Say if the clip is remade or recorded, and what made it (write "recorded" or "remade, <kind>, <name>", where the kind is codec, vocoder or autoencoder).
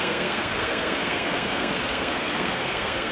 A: remade, codec, SNAC